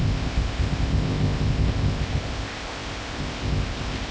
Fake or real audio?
fake